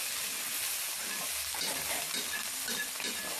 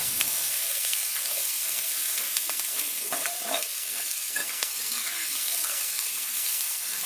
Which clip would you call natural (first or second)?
first